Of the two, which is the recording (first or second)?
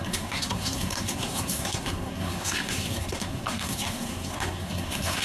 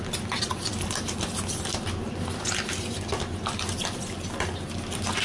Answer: second